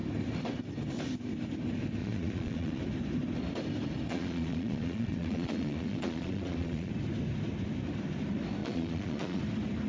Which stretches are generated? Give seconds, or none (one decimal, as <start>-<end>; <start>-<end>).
2.0-2.8; 4.1-6.9; 8.6-9.4